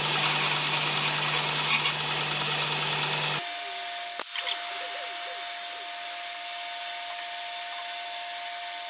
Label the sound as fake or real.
real